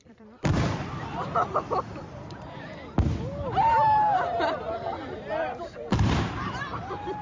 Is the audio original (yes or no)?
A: no